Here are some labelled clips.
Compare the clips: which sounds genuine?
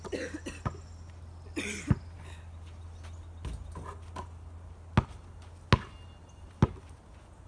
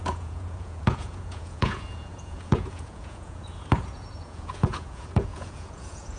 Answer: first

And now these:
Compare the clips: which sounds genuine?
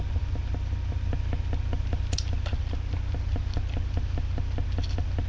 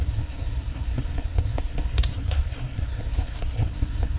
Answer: first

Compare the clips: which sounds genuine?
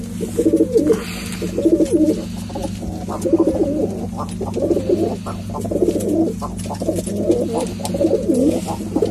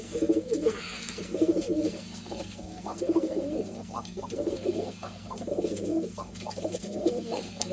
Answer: first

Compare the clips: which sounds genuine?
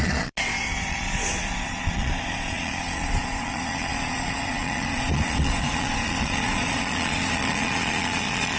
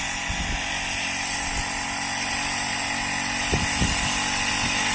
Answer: second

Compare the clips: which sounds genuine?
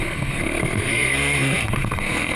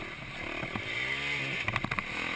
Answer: second